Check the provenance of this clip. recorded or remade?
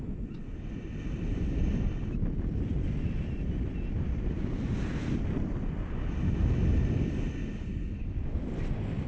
recorded